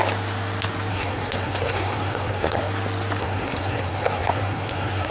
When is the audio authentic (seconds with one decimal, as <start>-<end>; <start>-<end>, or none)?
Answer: 0.0-0.9; 2.7-3.2